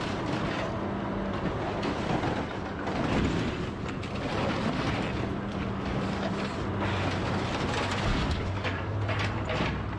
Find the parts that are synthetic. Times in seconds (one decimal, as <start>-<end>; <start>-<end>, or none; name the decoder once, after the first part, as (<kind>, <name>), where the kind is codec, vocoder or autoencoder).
5.5-6.4 (codec, DAC); 8.1-8.9